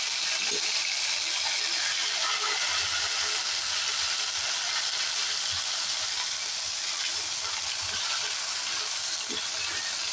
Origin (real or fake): real